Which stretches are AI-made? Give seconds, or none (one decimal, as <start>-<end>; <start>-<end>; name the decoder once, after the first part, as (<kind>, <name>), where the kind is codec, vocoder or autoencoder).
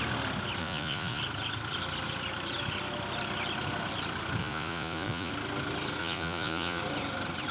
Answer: 0.6-1.2 (vocoder, Vocos); 4.4-5.3; 6.0-6.8